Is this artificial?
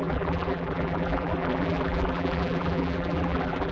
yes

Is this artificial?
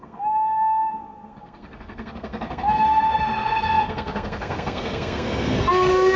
yes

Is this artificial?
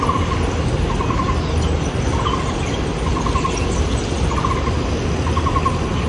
no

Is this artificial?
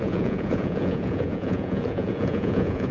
yes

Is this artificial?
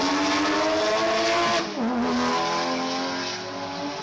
no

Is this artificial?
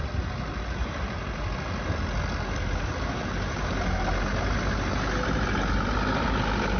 no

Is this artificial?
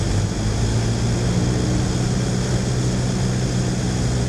no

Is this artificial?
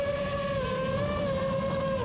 no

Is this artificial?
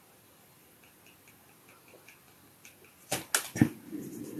no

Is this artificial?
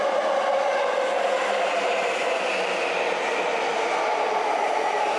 no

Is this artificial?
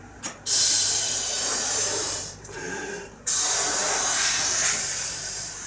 yes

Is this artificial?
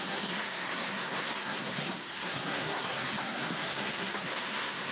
yes